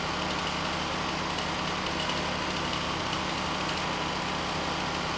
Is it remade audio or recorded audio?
recorded